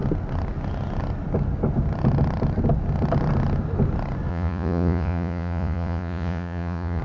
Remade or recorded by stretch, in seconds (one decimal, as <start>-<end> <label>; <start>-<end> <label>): 0.0-4.3 recorded; 4.3-7.0 remade